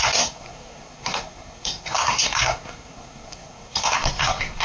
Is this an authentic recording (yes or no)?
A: no